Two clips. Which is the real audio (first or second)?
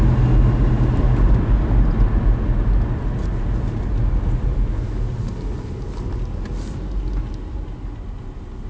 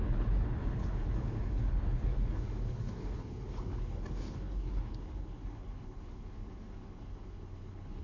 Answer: first